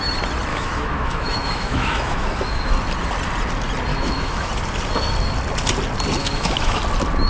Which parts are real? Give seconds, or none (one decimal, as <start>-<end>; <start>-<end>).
0.0-0.5; 2.7-3.9; 4.5-6.2; 6.8-7.3